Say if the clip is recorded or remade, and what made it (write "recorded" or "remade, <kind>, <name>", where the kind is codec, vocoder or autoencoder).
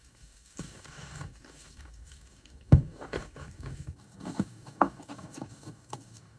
remade, codec, DAC